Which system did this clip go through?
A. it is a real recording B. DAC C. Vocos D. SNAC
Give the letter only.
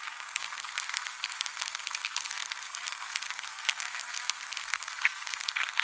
D